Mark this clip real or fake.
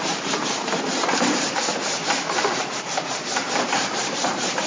fake